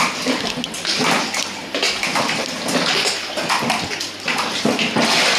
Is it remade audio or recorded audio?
recorded